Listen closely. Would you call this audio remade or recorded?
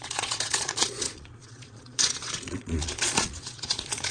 remade